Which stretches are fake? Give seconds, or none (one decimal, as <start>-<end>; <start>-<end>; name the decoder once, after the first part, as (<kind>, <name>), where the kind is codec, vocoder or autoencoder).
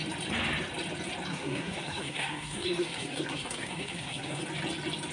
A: 1.3-4.4 (codec, SNAC)